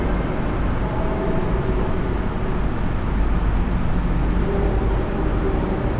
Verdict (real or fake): real